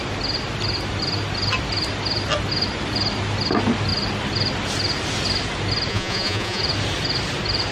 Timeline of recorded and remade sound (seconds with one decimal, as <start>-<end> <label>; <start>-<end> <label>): 0.0-5.9 recorded; 5.9-6.6 remade; 6.6-7.7 recorded